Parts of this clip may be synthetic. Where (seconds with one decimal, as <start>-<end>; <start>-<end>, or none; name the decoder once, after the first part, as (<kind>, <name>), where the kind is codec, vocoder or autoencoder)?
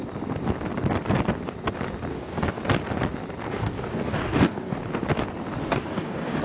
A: 2.1-2.6 (codec, DAC); 3.5-4.8; 5.6-6.4